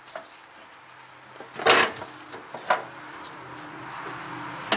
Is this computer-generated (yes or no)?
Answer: no